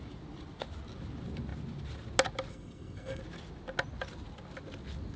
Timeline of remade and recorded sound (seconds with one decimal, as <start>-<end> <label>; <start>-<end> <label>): 0.0-2.5 recorded; 2.5-3.2 remade; 3.2-5.2 recorded